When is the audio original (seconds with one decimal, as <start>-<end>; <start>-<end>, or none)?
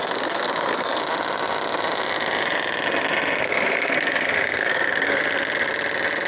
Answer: 1.0-3.4; 5.2-6.3